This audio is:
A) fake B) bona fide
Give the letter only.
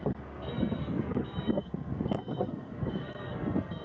A